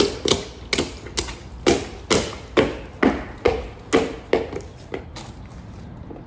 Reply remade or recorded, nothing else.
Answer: recorded